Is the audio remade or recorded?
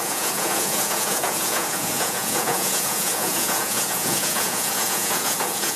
remade